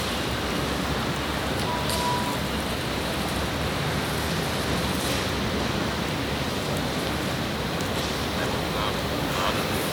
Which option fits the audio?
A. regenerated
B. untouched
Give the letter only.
B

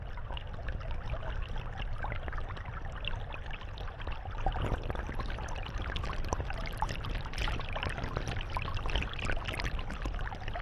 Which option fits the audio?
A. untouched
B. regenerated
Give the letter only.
A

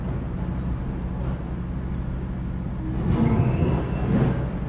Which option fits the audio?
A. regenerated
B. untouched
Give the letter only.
B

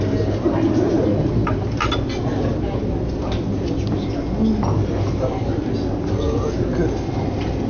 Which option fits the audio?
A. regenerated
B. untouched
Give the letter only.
B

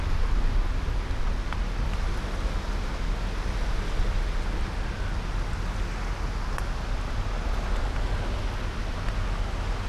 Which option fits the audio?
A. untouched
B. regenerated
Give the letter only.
A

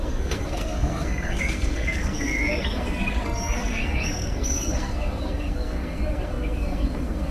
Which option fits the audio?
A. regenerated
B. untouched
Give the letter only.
A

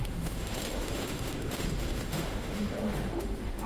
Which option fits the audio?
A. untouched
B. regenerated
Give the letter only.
B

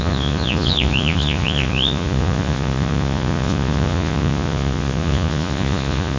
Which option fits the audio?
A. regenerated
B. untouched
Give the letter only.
A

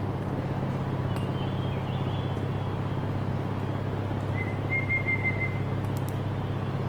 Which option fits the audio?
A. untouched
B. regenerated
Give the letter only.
A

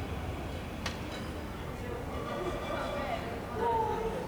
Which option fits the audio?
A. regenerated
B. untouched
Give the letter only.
B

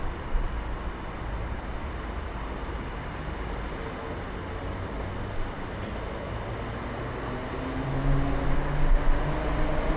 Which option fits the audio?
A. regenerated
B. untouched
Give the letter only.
B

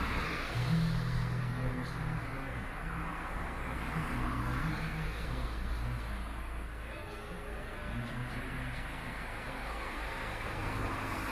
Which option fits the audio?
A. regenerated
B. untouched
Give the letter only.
A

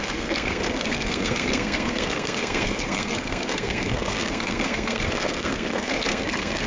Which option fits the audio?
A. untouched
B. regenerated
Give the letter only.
B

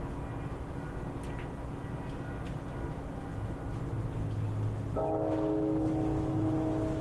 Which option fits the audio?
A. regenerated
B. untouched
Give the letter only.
B